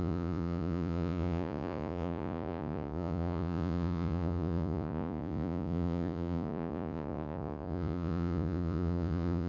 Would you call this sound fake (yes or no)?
yes